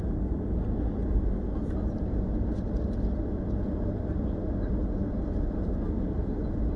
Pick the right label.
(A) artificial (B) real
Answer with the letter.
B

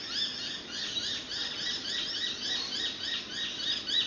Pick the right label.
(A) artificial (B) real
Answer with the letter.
B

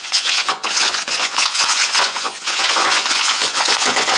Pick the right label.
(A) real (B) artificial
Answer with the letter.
B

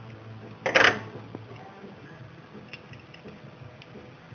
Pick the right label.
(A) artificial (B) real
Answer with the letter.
B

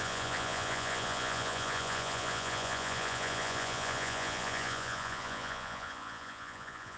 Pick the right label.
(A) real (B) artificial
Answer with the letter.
B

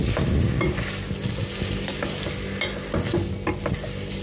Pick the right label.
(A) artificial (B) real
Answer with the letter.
B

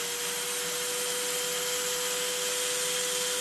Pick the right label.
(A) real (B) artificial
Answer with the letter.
A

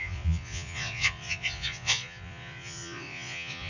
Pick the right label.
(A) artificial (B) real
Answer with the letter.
A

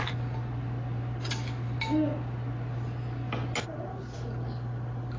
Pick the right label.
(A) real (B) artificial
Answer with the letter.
A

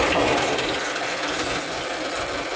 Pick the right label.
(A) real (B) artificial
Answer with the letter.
A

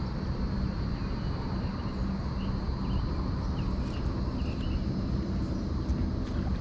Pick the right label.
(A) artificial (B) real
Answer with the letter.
B